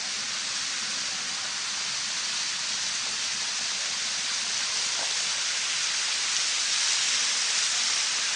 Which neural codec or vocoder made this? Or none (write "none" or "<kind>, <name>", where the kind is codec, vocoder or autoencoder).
none